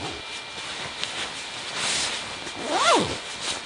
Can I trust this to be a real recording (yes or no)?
yes